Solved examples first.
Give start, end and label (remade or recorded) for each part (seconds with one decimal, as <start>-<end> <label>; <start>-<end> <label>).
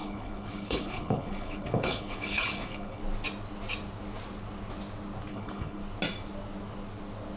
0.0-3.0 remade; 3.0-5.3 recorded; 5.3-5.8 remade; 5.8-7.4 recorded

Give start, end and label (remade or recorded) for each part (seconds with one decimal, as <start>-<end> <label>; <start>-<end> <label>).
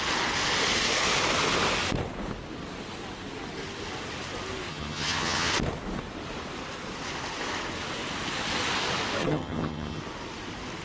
0.0-4.7 recorded; 4.7-5.5 remade; 5.5-9.2 recorded; 9.2-10.0 remade; 10.0-10.8 recorded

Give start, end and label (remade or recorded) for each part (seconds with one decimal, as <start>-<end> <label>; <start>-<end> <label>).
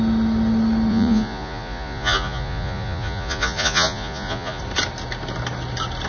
0.0-0.9 recorded; 0.9-4.6 remade; 4.6-6.1 recorded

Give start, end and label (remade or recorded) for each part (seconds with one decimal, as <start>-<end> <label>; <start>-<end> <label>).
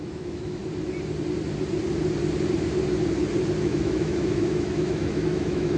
0.0-0.6 remade; 0.6-3.6 recorded; 3.6-5.8 remade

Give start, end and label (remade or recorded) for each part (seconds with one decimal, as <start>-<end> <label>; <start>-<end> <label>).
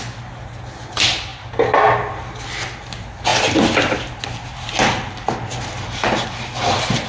0.0-7.1 recorded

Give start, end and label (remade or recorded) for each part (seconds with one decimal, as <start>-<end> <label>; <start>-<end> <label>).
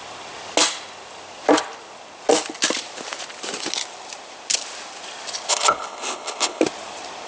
0.0-5.5 recorded; 5.5-6.6 remade; 6.6-7.3 recorded